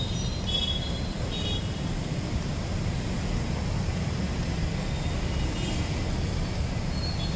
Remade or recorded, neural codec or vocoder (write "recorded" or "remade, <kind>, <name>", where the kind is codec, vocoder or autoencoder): recorded